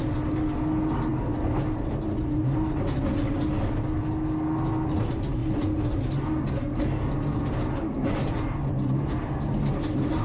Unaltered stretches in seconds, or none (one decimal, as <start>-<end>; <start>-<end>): 0.0-10.2